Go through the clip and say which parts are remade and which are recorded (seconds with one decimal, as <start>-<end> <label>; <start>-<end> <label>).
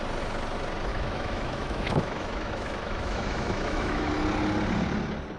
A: 0.0-0.9 recorded; 0.9-4.1 remade; 4.1-5.4 recorded